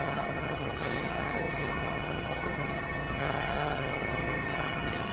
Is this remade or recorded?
remade